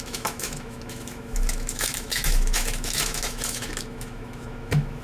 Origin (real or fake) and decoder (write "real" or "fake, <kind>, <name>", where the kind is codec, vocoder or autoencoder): fake, autoencoder, DAC-VAE